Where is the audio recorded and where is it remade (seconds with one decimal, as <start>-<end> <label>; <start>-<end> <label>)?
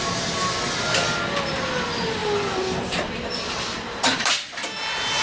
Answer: 0.0-2.2 recorded; 2.2-4.3 remade; 4.3-5.2 recorded